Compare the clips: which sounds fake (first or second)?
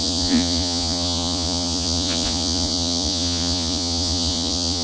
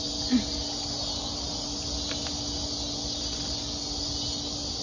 first